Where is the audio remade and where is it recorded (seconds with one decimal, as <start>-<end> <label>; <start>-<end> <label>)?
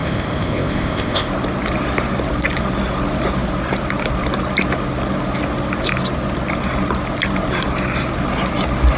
0.0-1.3 remade; 1.3-9.0 recorded